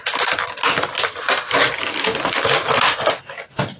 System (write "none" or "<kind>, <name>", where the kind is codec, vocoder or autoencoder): none